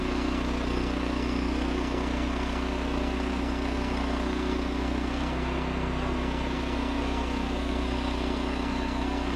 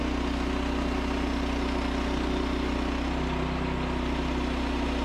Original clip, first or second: second